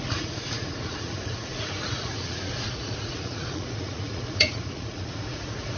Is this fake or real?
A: fake